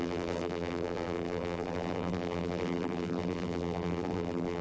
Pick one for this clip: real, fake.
fake